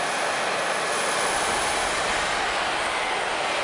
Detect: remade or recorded recorded